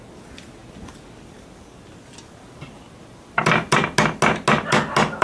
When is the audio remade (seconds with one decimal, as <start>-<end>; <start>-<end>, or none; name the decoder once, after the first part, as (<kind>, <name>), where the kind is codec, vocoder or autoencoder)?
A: none